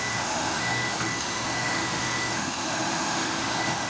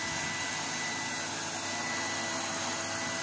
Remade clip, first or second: first